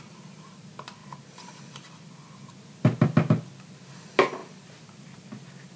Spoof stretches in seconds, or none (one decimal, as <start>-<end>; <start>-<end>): 1.0-1.6

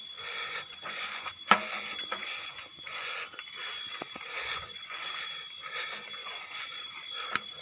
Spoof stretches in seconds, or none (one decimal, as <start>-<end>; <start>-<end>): 0.0-3.3; 3.9-5.2; 6.2-6.8